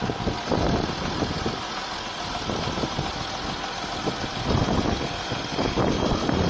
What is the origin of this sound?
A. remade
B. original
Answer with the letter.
B